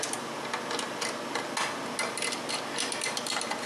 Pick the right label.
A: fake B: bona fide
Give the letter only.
B